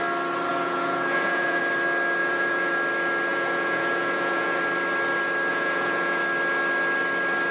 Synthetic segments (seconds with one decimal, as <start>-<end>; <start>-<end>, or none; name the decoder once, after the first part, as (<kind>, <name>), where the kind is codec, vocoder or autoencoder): 0.5-1.6 (vocoder, Vocos); 2.2-2.7; 3.3-4.6; 5.5-6.2